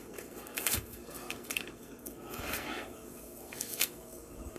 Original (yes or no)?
no